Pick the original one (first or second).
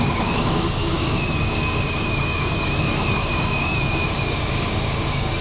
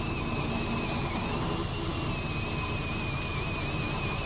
second